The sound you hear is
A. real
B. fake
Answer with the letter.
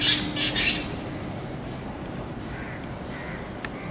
A